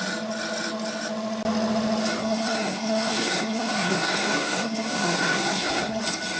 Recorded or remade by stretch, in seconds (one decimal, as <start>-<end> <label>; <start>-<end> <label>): 0.0-2.2 recorded; 2.2-6.0 remade; 6.0-6.4 recorded